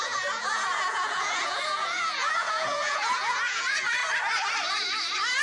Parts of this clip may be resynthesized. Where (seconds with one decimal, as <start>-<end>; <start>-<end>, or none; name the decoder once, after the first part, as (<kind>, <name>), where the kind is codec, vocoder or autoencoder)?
0.0-4.0 (vocoder, Vocos)